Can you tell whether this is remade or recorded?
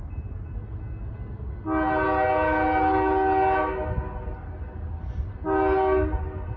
recorded